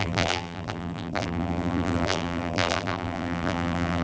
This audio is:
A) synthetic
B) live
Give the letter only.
A